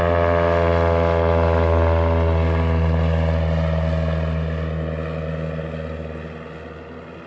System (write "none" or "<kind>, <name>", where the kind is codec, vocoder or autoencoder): none